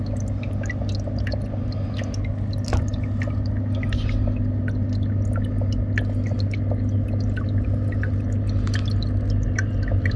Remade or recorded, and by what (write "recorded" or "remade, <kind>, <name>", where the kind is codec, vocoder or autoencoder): recorded